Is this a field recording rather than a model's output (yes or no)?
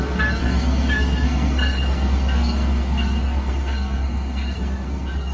no